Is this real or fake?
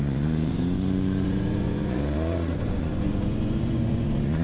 fake